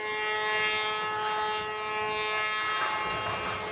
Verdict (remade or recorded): recorded